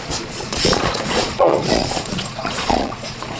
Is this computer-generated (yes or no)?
yes